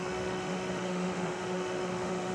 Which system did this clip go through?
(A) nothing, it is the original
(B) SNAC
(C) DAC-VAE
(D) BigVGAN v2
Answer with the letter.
C